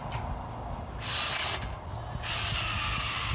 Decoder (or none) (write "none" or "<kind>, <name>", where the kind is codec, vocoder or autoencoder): none